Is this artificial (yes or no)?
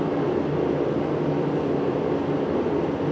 no